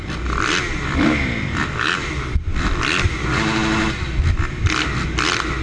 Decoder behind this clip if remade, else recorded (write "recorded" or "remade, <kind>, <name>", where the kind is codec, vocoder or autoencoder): recorded